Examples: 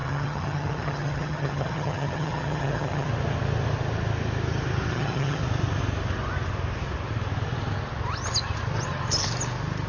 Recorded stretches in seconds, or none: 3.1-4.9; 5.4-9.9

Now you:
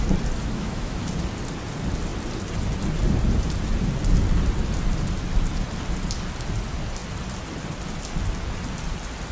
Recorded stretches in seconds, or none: 0.0-0.4; 1.0-9.3

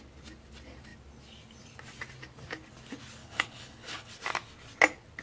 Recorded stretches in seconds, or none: 0.0-3.2; 4.1-5.2

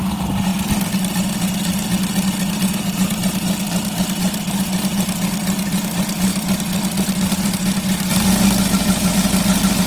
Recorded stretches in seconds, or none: 0.0-9.9

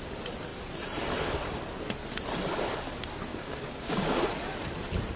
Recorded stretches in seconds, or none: 0.0-3.3; 4.2-5.2